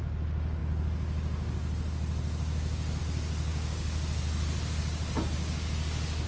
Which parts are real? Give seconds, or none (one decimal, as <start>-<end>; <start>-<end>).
0.0-6.3